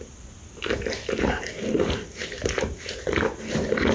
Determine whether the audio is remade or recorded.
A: recorded